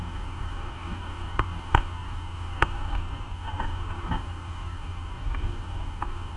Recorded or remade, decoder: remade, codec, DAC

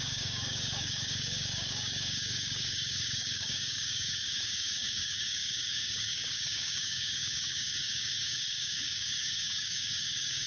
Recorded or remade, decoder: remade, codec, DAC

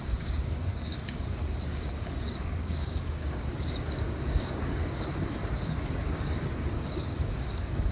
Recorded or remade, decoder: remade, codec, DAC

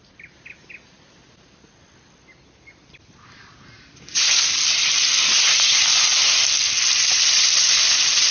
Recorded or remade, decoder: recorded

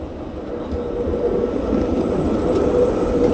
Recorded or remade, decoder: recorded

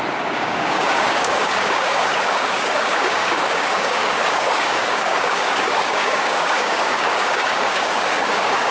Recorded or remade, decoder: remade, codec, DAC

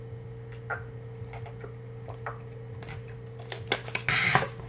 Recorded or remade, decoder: recorded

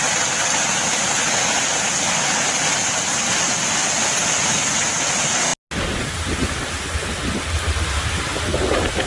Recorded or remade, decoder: recorded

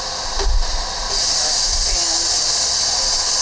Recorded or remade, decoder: recorded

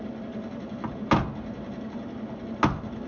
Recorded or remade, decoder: recorded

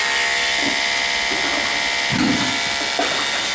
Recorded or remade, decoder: recorded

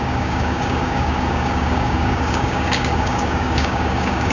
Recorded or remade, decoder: remade, codec, DAC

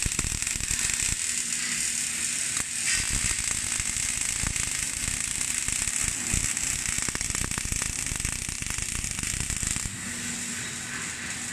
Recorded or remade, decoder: recorded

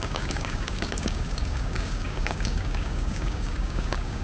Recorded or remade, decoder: remade, codec, DAC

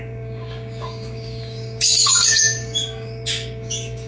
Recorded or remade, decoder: remade, codec, DAC